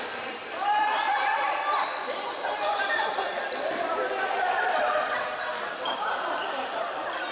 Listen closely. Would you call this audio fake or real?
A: fake